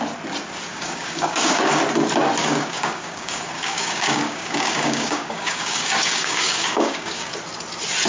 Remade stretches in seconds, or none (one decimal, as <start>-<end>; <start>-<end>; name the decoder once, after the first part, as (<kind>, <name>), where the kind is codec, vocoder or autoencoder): 0.7-1.8 (codec, DAC); 2.4-7.3